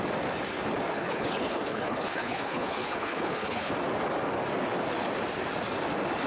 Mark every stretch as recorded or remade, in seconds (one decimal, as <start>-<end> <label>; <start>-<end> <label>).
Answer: 0.0-0.9 recorded; 0.9-3.7 remade; 3.7-6.3 recorded